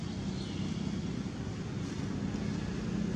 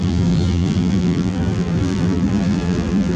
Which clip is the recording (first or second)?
first